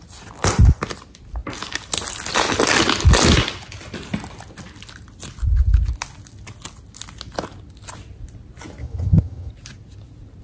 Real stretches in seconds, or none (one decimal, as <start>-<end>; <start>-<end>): 0.0-8.8; 9.5-10.4

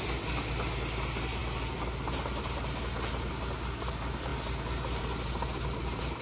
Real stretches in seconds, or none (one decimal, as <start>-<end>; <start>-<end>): 0.0-6.2

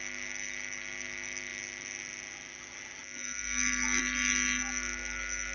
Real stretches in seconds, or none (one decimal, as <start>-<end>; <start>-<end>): 0.0-5.5

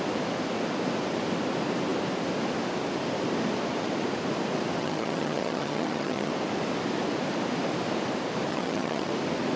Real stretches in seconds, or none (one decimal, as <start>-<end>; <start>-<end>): 0.0-4.8; 6.3-8.5; 9.1-9.6